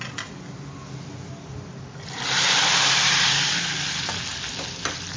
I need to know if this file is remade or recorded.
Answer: recorded